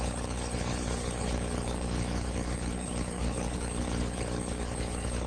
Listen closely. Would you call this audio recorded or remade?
remade